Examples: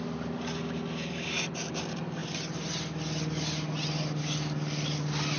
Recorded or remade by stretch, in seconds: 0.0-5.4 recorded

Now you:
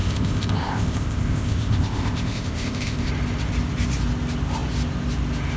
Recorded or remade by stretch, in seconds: 0.0-3.1 remade; 3.1-5.6 recorded

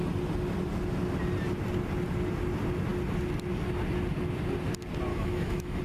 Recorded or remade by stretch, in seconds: 0.0-5.1 recorded; 5.1-5.8 remade

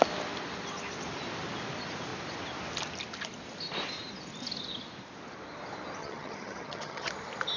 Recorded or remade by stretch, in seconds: 0.0-6.0 recorded; 6.0-7.1 remade; 7.1-7.6 recorded

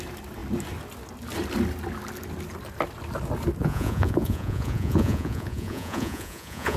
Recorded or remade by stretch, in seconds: 0.0-3.6 recorded; 3.6-6.8 remade

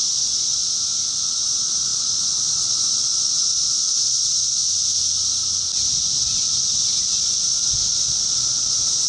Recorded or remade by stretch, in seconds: 0.0-0.6 remade; 0.6-1.3 recorded; 1.3-4.6 remade; 4.6-7.0 recorded; 7.0-9.1 remade